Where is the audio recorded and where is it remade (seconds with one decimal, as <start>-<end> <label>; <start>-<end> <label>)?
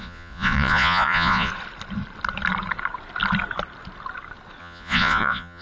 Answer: 0.0-1.5 remade; 1.5-4.6 recorded; 4.6-5.6 remade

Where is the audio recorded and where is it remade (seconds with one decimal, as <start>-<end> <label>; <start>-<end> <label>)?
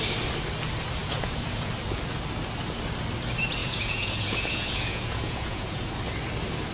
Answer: 0.0-1.0 recorded; 1.0-1.7 remade; 1.7-3.6 recorded; 3.6-5.9 remade; 5.9-6.7 recorded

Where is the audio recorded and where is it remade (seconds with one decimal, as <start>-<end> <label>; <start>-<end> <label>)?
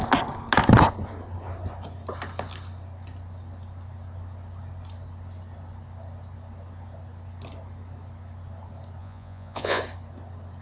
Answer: 0.0-9.0 recorded; 9.0-9.8 remade; 9.8-10.6 recorded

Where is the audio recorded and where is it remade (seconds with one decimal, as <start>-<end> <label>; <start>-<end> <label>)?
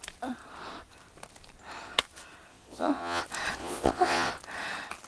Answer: 0.0-2.5 recorded; 2.5-3.2 remade; 3.2-3.6 recorded; 3.6-4.3 remade; 4.3-5.1 recorded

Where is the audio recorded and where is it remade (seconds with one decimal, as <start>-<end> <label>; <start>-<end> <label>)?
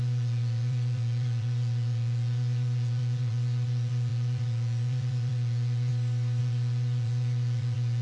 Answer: 0.0-5.9 remade; 5.9-6.4 recorded; 6.4-8.0 remade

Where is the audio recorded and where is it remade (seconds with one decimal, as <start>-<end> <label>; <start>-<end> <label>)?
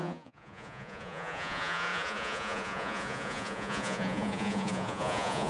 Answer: 0.0-5.5 remade